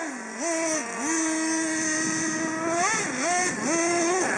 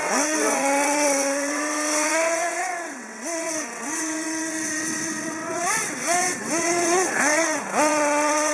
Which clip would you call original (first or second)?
first